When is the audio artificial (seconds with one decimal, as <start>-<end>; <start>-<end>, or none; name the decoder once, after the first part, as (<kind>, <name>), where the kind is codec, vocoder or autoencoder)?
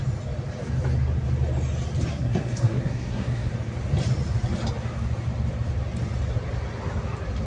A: 2.1-3.5 (codec, SNAC)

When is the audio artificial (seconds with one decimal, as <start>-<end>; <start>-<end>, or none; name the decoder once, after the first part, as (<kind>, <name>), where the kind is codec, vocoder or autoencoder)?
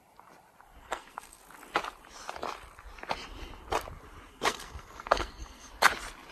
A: 0.8-1.4 (codec, SNAC); 4.3-5.7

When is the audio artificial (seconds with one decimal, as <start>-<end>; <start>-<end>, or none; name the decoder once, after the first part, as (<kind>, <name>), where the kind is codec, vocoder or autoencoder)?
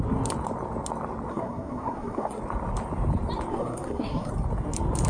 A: 1.3-2.4 (codec, SNAC); 3.5-4.3